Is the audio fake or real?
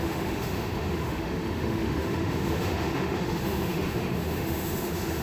fake